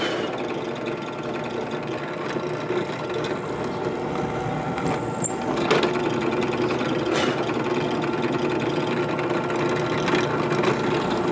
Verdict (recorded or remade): recorded